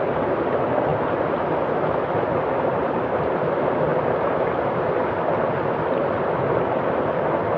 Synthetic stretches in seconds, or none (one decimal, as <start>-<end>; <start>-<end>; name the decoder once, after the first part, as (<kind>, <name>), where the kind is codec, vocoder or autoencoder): none